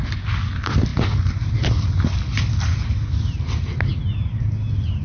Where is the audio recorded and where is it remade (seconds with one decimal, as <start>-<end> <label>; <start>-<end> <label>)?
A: 0.0-5.0 recorded

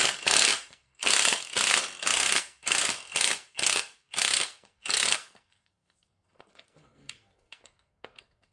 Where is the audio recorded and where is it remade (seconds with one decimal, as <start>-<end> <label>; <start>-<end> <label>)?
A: 0.0-8.5 remade

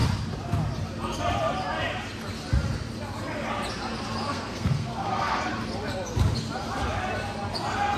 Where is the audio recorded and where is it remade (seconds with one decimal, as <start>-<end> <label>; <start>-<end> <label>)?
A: 0.0-4.3 recorded; 4.3-5.5 remade; 5.5-8.0 recorded

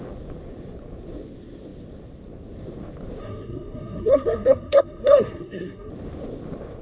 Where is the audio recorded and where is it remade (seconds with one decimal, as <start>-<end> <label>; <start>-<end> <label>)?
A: 0.0-3.2 recorded; 3.2-5.9 remade; 5.9-6.8 recorded

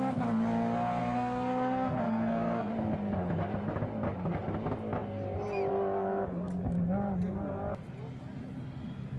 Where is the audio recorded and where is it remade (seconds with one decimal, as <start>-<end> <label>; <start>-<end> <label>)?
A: 0.0-1.0 recorded; 1.0-2.7 remade; 2.7-9.2 recorded

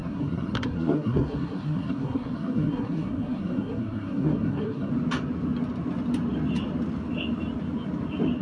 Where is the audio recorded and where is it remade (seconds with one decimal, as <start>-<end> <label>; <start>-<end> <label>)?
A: 0.0-4.9 remade; 4.9-8.4 recorded

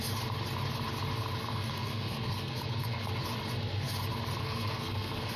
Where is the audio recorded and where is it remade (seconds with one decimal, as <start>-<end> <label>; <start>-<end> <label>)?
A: 0.0-1.5 recorded; 1.5-3.1 remade; 3.1-4.4 recorded; 4.4-5.4 remade

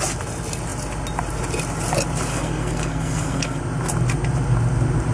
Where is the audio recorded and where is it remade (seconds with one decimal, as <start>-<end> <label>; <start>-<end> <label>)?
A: 0.0-2.3 recorded; 2.3-3.6 remade; 3.6-5.1 recorded